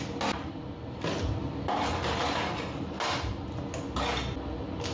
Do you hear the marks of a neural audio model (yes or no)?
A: no